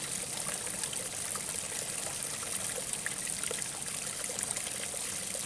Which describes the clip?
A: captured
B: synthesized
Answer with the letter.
A